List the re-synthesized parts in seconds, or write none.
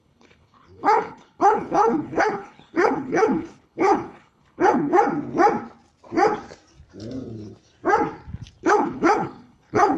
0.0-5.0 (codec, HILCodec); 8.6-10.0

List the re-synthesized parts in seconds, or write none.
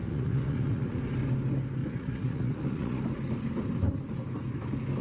0.0-1.0 (vocoder, Vocos); 1.8-3.0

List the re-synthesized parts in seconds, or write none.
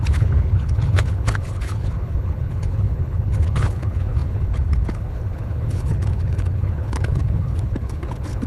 0.0-8.5 (codec, HILCodec)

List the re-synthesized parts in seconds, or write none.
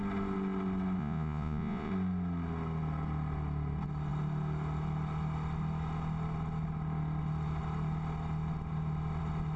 1.0-1.9 (vocoder, Vocos)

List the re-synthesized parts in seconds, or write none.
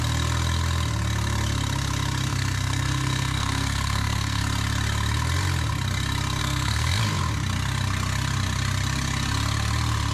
2.3-4.4 (codec, SNAC); 6.4-7.0